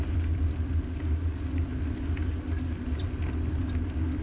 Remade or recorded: recorded